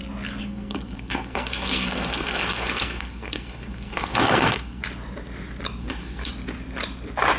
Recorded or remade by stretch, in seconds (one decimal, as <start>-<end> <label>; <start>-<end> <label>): 0.0-0.4 recorded; 0.4-4.8 remade; 4.8-5.8 recorded; 5.8-6.3 remade; 6.3-7.4 recorded